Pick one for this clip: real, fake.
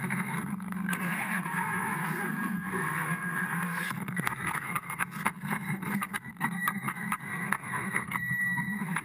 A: fake